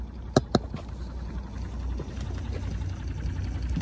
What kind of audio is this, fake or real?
real